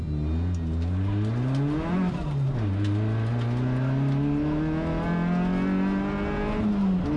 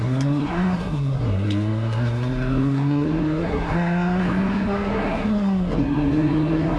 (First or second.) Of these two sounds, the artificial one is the second